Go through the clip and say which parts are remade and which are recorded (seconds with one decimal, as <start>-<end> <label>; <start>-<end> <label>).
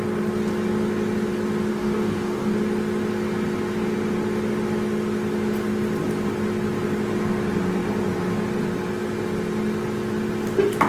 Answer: 0.0-1.7 recorded; 1.7-2.5 remade; 2.5-10.9 recorded